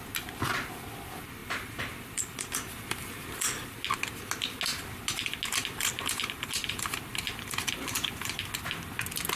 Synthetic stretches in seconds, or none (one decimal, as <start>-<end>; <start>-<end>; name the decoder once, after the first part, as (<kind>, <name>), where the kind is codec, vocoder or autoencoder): 1.4-3.7 (vocoder, BigVGAN v2); 5.6-8.4